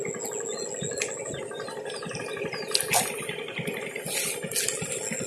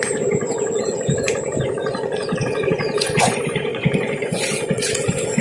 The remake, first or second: second